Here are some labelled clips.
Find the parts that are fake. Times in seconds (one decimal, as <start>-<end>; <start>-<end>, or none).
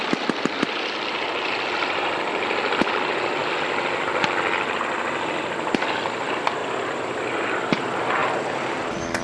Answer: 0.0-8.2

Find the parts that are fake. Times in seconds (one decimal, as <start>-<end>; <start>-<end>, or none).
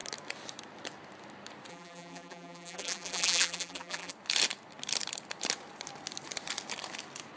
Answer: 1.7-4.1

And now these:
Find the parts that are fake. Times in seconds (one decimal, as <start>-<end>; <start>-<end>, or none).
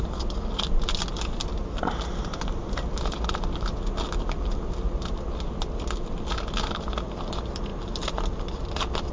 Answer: none